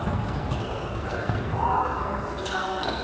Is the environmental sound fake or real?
fake